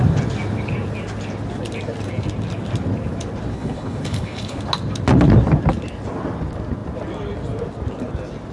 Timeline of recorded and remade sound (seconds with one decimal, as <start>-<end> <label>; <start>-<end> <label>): 0.0-3.5 recorded; 3.5-4.6 remade; 4.6-8.5 recorded